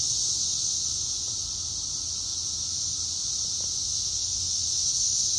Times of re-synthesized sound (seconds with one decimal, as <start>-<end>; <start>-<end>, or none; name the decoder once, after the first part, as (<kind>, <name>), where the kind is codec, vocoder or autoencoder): 0.4-0.9 (autoencoder, DAC-VAE); 3.8-5.4